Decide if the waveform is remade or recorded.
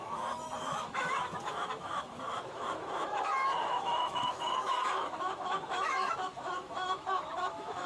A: remade